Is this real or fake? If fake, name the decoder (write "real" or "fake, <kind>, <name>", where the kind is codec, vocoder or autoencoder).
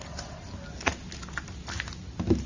real